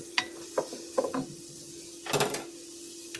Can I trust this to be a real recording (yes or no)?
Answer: yes